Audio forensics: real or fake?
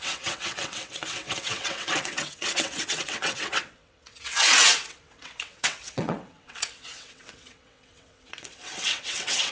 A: fake